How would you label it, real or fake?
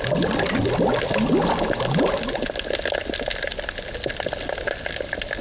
real